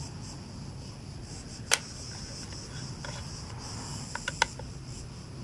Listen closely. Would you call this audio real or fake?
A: real